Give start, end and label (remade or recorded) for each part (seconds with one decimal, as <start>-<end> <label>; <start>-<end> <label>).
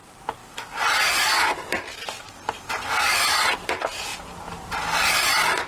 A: 0.0-5.7 recorded